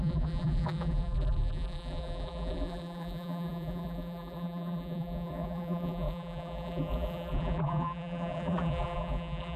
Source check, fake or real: fake